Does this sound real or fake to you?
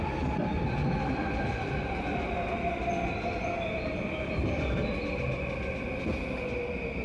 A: real